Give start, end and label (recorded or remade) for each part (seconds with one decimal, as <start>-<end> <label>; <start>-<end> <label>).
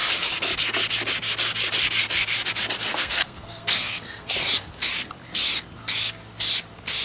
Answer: 0.0-2.9 recorded; 2.9-4.3 remade; 4.3-7.0 recorded